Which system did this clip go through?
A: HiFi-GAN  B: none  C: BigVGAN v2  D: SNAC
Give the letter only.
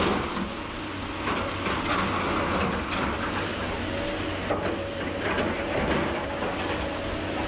B